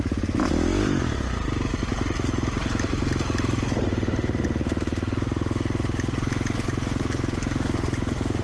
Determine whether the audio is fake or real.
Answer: real